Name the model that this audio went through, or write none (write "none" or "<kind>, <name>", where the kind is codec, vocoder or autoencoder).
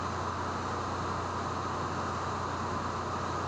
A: none